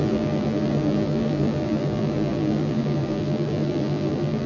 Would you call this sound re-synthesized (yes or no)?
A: yes